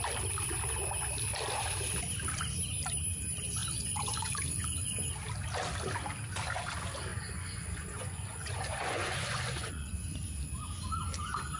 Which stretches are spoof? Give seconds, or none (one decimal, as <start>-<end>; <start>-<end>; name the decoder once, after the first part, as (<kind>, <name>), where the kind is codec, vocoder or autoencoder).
3.6-4.9 (vocoder, Vocos); 7.1-10.0